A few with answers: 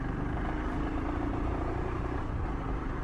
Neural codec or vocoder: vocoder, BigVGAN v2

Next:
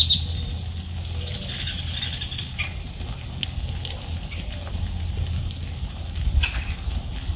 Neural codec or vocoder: none